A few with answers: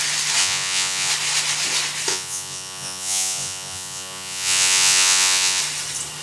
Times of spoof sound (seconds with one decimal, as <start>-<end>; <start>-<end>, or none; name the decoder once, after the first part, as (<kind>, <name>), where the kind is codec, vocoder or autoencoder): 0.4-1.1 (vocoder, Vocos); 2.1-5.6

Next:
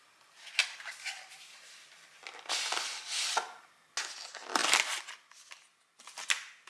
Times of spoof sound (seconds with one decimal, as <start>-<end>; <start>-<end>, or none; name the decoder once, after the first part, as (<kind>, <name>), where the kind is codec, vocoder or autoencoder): none

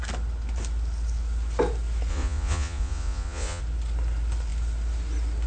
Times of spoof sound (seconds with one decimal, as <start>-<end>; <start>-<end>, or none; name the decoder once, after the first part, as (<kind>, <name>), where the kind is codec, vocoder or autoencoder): 2.1-3.6 (vocoder, Vocos)